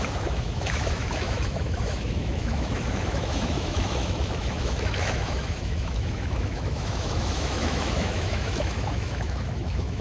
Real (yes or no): no